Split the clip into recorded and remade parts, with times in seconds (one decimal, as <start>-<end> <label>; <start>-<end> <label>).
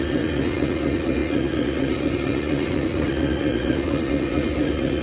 0.0-5.0 remade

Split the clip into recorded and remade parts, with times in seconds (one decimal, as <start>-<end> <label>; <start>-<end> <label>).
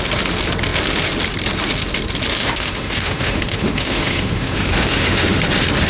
0.0-2.3 recorded; 2.3-5.4 remade; 5.4-5.9 recorded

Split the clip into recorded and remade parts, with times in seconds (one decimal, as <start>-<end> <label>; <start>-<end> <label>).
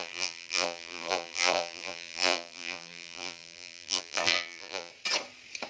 0.0-4.9 remade; 4.9-5.7 recorded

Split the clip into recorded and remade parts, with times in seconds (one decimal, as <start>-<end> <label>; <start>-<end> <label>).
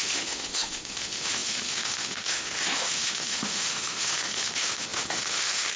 0.0-5.8 remade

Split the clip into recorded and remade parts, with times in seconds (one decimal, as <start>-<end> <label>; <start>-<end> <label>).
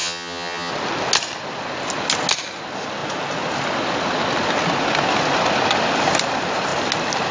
0.0-0.7 remade; 0.7-7.3 recorded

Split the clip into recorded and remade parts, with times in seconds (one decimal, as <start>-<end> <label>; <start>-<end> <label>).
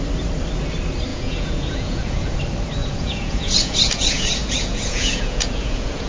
0.0-1.1 recorded; 1.1-2.4 remade; 2.4-2.8 recorded; 2.8-6.1 remade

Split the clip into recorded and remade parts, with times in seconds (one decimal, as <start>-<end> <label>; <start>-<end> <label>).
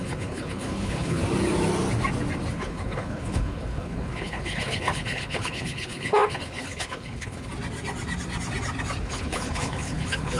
0.0-1.2 remade; 1.2-2.5 recorded; 2.5-7.5 remade; 7.5-9.0 recorded; 9.0-10.4 remade